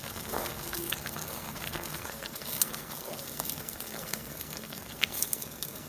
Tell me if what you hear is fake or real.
fake